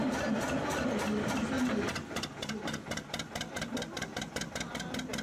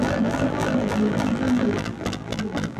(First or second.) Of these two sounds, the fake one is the second